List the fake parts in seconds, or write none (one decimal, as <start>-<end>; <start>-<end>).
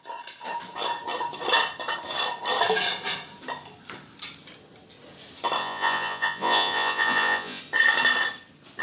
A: 5.6-7.6